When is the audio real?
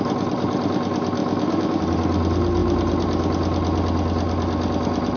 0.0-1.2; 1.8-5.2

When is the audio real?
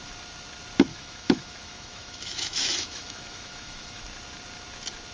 0.0-0.9; 4.0-5.1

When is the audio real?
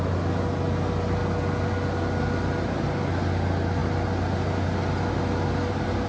0.0-6.1